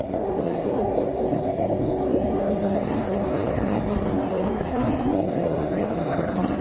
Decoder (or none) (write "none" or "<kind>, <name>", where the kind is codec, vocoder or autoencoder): codec, SNAC